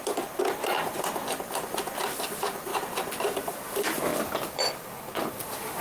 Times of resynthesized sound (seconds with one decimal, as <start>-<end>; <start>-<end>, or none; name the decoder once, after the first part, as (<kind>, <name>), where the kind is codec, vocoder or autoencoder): 0.0-5.8 (vocoder, BigVGAN v2)